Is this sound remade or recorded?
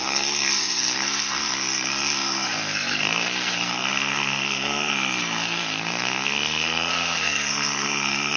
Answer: remade